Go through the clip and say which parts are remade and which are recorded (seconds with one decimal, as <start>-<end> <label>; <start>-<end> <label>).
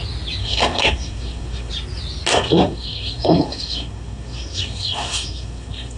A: 0.0-0.4 recorded; 0.4-1.7 remade; 1.7-2.3 recorded; 2.3-6.0 remade